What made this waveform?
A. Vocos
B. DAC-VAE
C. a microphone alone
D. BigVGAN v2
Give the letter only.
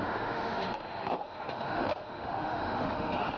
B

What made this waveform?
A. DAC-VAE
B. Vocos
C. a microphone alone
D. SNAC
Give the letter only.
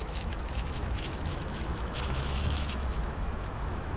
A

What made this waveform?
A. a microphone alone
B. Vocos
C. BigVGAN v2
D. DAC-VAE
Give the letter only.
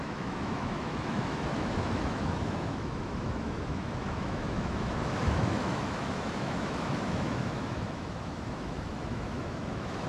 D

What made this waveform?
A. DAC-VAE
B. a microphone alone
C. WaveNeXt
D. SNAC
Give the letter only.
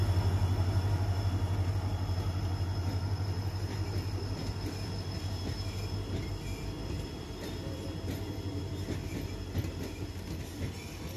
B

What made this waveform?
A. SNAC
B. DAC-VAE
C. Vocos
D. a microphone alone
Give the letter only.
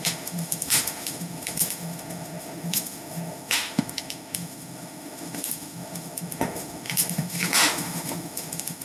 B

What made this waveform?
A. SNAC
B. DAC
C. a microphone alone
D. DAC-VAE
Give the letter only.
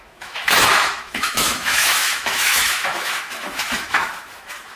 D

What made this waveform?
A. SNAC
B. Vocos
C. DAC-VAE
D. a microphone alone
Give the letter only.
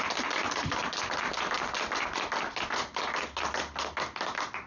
D